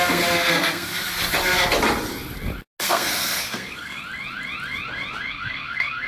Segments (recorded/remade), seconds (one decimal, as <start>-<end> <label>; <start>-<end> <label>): 0.0-1.0 remade; 1.0-2.8 recorded; 2.8-4.0 remade; 4.0-5.3 recorded; 5.3-6.1 remade